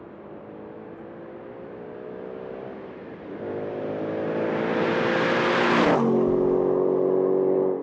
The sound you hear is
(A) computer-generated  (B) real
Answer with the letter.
B